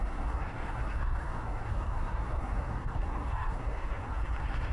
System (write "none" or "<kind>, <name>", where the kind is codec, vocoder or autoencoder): codec, SNAC